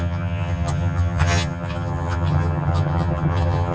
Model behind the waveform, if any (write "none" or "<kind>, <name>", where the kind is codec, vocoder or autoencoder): vocoder, HiFi-GAN